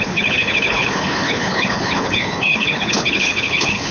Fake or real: fake